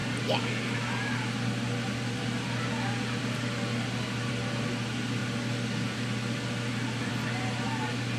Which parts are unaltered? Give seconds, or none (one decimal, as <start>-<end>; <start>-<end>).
0.0-8.2